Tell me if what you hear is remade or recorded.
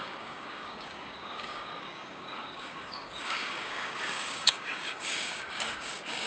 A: remade